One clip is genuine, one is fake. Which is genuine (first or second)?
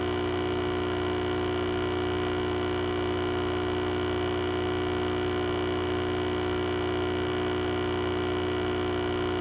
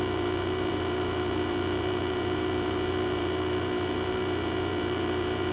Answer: first